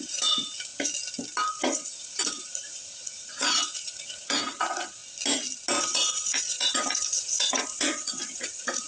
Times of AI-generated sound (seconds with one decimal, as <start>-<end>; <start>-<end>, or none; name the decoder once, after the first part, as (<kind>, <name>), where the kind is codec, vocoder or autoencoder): 0.0-0.7 (vocoder, Vocos); 1.5-5.0; 5.8-8.9

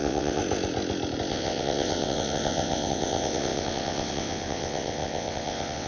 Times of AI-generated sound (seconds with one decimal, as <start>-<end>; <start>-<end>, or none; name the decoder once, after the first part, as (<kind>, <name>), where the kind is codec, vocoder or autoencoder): 0.0-0.4 (vocoder, WaveNeXt); 1.3-5.9

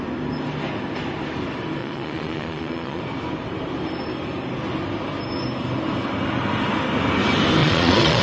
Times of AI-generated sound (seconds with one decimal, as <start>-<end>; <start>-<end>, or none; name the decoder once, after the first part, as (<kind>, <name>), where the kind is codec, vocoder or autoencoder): 1.8-3.0 (vocoder, Vocos); 7.6-8.2

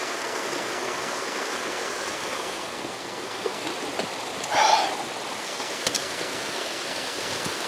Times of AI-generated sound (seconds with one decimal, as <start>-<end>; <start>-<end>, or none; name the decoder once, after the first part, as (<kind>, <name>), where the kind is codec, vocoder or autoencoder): 0.0-3.7 (codec, SNAC); 5.4-7.7